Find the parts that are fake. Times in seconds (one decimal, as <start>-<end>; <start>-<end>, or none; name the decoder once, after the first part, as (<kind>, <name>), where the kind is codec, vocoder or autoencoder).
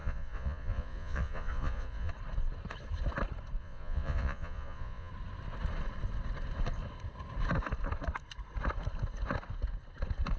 0.0-2.1 (vocoder, Vocos); 3.6-5.1